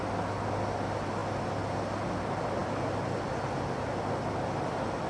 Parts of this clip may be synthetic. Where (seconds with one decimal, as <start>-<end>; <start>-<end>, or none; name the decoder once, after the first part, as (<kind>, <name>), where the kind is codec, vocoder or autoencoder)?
none